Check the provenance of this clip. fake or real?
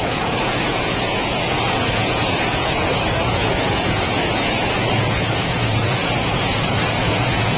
fake